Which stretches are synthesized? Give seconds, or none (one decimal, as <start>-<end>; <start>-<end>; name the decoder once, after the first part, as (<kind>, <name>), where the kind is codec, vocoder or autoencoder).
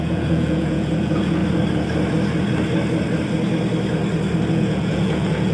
0.0-1.4 (vocoder, Vocos); 4.5-5.5